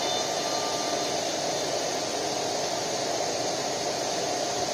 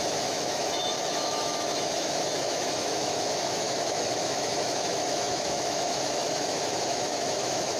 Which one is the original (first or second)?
first